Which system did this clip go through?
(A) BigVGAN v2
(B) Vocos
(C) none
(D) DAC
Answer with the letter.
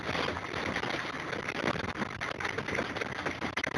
C